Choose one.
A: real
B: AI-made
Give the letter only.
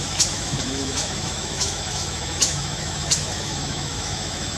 B